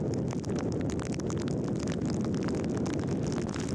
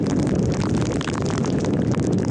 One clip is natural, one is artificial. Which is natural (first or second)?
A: first